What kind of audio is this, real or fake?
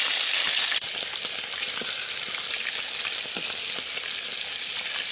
real